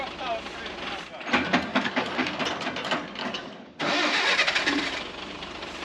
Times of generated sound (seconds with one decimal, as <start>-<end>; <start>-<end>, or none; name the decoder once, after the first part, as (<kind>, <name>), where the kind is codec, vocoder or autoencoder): 1.7-2.4 (codec, DAC); 3.2-3.8